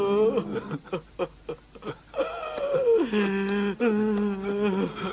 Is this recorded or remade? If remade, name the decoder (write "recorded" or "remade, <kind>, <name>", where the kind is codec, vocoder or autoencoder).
recorded